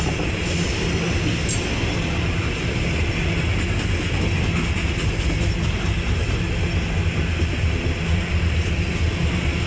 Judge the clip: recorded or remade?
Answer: recorded